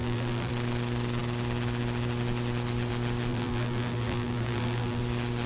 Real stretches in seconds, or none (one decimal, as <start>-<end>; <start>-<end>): 0.5-3.3; 5.0-5.5